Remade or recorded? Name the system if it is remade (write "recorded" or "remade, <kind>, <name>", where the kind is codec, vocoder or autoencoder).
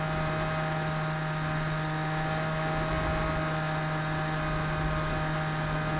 recorded